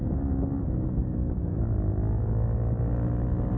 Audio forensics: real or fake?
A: real